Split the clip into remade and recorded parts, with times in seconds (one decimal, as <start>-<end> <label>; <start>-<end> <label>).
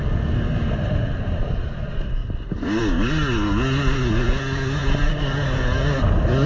0.0-6.5 recorded